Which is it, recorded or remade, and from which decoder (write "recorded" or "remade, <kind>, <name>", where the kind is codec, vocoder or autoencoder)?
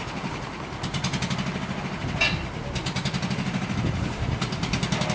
recorded